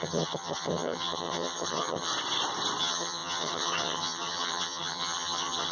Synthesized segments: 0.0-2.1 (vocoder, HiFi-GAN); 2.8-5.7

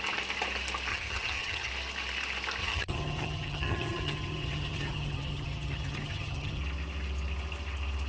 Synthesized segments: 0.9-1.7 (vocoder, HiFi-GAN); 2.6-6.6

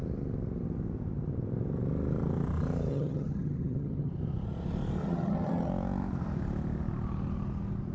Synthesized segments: 2.9-4.1 (vocoder, HiFi-GAN); 5.0-5.7